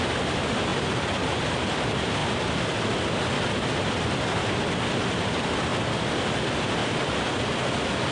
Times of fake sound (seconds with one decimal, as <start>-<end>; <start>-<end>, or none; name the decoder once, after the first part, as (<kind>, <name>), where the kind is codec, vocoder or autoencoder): none